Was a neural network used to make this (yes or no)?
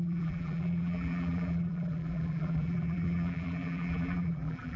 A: yes